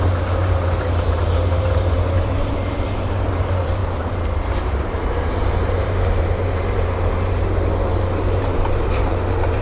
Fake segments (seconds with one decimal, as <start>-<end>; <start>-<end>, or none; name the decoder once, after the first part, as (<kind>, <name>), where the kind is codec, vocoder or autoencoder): 0.0-9.6 (vocoder, BigVGAN v2)